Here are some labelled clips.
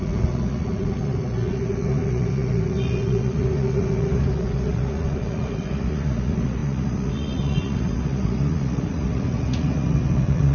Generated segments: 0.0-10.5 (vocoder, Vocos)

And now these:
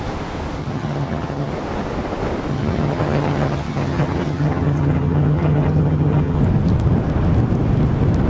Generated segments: 0.6-1.5 (vocoder, HiFi-GAN); 2.5-6.4

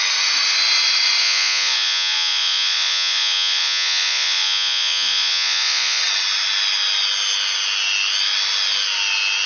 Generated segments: 1.2-6.0 (vocoder, Vocos)

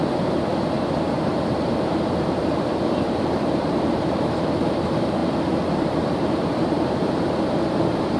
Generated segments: 0.0-0.5 (vocoder, BigVGAN v2); 1.3-5.2; 5.7-8.2

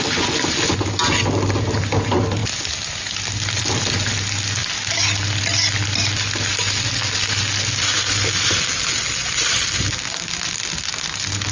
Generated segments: none